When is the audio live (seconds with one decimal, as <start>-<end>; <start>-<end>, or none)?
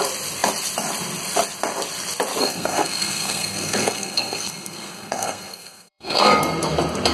0.0-2.4; 6.4-7.1